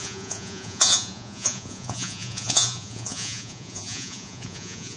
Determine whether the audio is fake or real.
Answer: fake